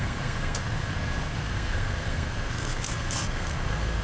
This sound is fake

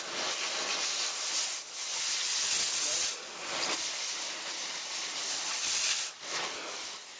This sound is fake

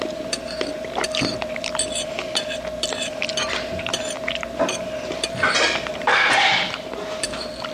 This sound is fake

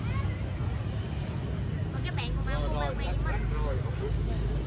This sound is real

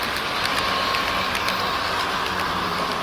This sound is real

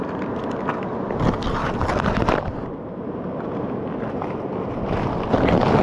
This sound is real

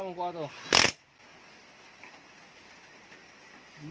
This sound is real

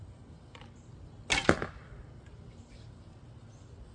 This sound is real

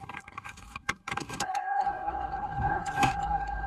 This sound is fake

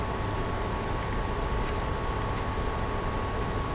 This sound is real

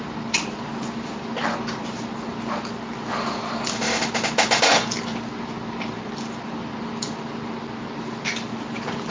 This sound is real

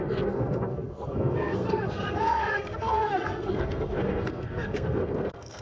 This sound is fake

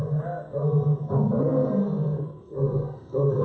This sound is fake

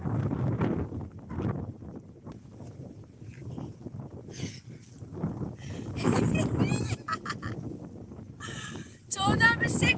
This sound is real